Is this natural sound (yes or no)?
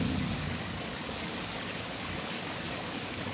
no